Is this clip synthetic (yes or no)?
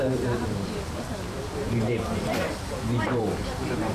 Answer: yes